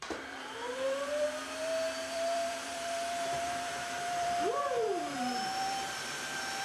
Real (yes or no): no